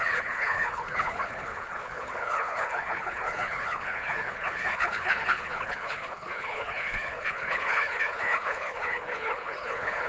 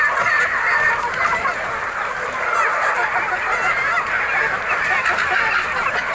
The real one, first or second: second